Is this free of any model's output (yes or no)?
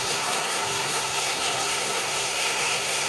no